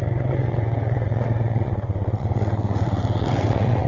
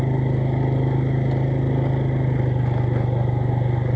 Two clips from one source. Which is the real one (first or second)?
second